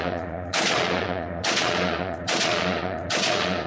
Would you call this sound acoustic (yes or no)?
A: no